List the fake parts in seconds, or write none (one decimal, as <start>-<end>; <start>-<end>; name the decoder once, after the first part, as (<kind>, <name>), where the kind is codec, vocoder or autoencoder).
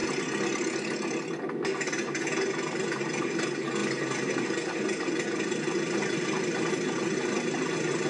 none